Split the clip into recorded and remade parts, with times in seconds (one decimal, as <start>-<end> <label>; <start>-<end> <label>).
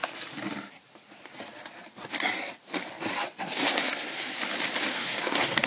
0.0-3.4 recorded; 3.4-4.3 remade; 4.3-4.9 recorded; 4.9-5.7 remade